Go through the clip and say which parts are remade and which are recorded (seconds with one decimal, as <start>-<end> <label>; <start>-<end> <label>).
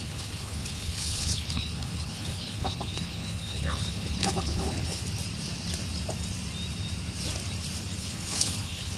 0.0-5.0 remade; 5.0-8.0 recorded; 8.0-9.0 remade